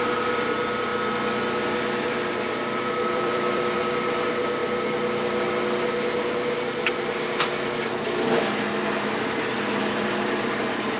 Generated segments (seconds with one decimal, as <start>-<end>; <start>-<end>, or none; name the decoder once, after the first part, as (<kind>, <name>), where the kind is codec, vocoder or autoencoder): 0.0-0.9 (vocoder, BigVGAN v2); 3.1-4.6; 9.8-11.0